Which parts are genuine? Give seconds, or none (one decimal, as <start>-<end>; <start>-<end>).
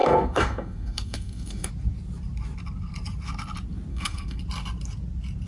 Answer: 1.7-3.9; 4.4-5.5